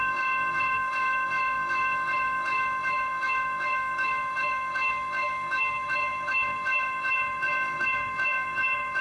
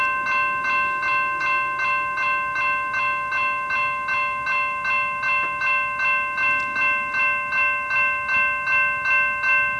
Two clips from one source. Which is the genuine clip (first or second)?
second